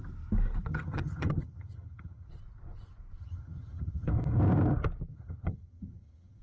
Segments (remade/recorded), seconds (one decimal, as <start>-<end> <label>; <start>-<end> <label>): 0.0-0.7 recorded; 0.7-2.3 remade; 2.3-3.2 recorded; 3.2-4.1 remade; 4.1-5.1 recorded; 5.1-6.4 remade